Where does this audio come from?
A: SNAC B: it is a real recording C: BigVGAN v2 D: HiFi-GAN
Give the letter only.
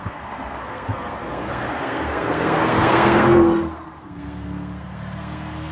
A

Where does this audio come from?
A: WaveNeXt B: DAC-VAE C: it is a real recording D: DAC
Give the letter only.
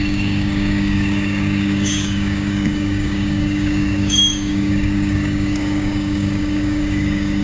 D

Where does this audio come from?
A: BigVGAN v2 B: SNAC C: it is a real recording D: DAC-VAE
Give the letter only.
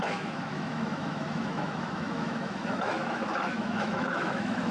D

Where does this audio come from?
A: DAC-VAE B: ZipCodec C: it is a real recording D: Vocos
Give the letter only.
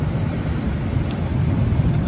C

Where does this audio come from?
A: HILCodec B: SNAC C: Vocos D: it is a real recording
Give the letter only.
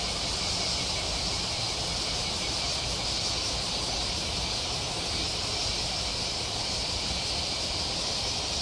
D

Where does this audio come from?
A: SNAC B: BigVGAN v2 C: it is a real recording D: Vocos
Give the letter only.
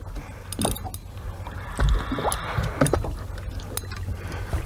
C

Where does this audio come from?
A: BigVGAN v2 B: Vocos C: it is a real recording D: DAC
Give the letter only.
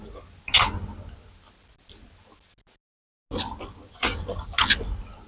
C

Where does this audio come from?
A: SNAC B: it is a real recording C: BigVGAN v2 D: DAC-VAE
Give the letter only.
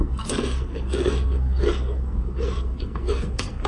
A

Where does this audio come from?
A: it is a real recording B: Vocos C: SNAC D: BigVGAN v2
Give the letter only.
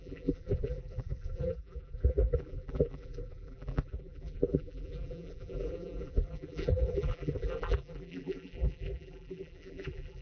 D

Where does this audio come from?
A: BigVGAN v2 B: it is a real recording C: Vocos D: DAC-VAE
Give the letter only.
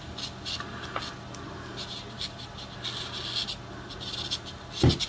B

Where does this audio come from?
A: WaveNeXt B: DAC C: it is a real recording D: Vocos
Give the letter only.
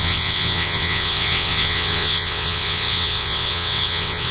A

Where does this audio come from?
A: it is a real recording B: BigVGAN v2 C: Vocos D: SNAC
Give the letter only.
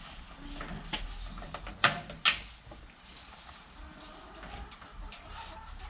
A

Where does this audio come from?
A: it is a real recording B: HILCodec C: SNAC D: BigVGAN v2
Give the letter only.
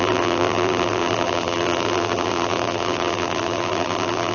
D